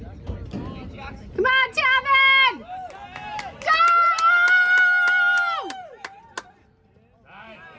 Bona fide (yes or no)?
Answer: yes